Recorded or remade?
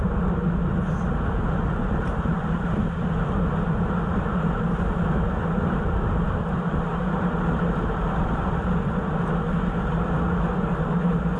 recorded